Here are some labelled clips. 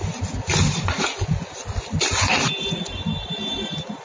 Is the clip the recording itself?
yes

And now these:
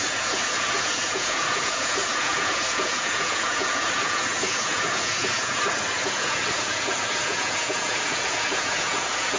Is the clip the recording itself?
no